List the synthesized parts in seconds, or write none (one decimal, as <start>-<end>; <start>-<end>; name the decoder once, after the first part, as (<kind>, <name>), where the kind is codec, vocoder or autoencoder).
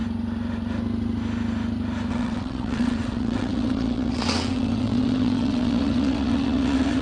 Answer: 2.1-7.0 (vocoder, WaveNeXt)